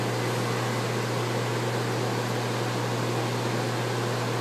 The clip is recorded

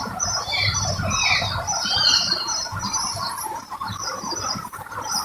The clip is remade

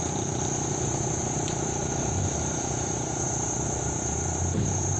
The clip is remade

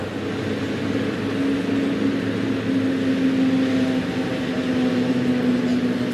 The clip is recorded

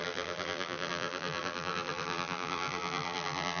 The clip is remade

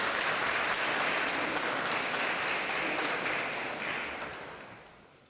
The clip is remade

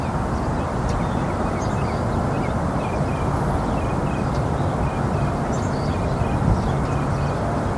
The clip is recorded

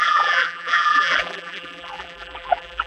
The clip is remade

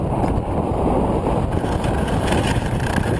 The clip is remade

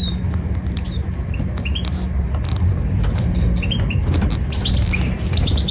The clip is remade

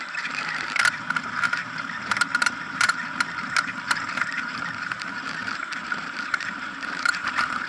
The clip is remade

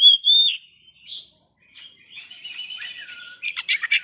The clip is remade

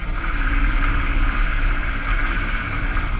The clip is remade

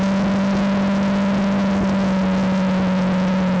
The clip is recorded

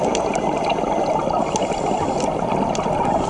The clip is recorded